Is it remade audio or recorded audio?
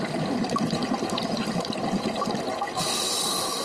recorded